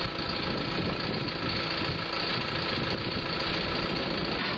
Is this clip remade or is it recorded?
recorded